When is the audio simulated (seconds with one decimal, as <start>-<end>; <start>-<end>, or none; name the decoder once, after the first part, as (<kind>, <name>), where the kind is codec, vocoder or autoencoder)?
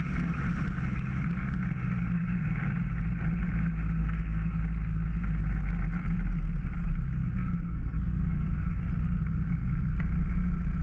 4.0-4.6 (codec, SNAC); 7.2-8.8